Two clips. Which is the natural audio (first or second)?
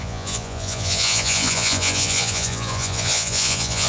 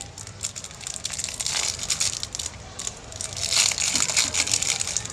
second